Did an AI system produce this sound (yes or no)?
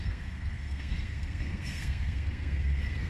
yes